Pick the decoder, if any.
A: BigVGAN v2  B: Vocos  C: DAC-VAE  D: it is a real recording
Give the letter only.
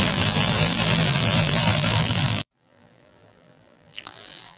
A